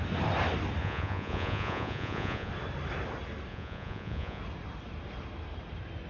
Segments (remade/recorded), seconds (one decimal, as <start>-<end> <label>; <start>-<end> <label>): 0.0-0.8 recorded; 0.8-2.5 remade; 2.5-3.5 recorded; 3.5-4.4 remade; 4.4-6.1 recorded